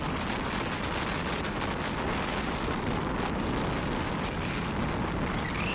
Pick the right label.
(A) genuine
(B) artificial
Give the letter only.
A